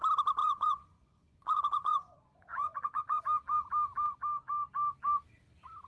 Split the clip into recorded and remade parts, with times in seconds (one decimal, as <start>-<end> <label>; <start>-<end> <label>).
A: 0.0-0.4 recorded; 0.4-3.2 remade; 3.2-5.9 recorded